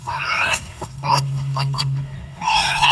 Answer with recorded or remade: remade